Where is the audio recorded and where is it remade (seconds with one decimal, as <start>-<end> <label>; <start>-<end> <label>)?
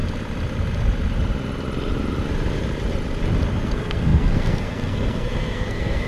0.0-3.5 recorded; 3.5-6.1 remade